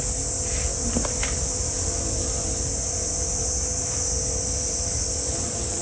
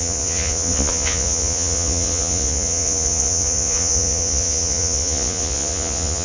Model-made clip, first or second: second